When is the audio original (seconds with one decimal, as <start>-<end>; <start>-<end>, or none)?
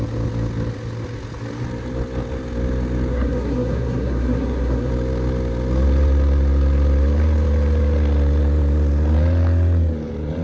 0.0-3.1; 4.9-10.4